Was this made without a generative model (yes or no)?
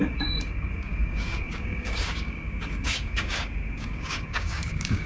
no